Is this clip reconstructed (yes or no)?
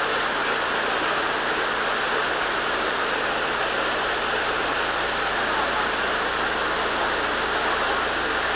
no